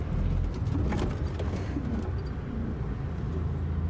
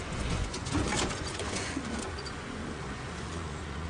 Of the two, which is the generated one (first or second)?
second